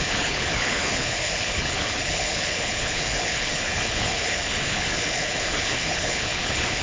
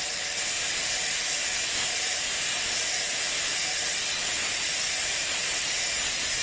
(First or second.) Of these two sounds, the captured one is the second